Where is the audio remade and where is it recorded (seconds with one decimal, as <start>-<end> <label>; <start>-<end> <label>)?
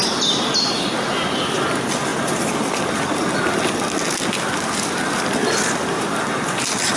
0.0-7.0 recorded